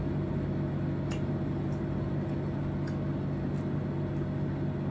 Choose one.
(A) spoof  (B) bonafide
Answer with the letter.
B